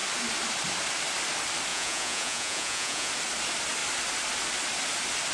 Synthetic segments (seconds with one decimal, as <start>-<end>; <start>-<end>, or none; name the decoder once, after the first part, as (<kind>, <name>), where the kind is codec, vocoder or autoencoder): 1.7-3.1 (vocoder, Vocos)